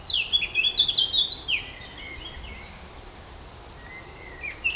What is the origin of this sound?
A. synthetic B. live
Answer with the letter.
B